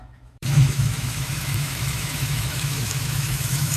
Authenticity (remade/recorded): remade